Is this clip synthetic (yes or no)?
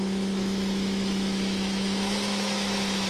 yes